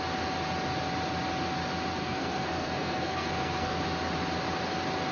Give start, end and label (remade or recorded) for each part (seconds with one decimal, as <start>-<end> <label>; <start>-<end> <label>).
0.0-2.0 recorded; 2.0-3.8 remade; 3.8-5.1 recorded